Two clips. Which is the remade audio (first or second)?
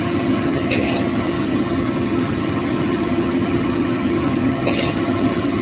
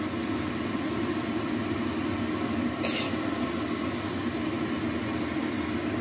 first